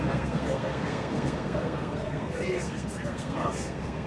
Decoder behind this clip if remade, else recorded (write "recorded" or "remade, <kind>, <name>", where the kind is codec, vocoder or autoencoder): remade, codec, SNAC